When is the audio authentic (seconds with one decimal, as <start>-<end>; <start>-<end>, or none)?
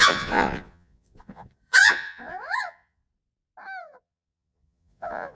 3.0-3.8